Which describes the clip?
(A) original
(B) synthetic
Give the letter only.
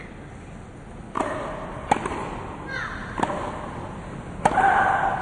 A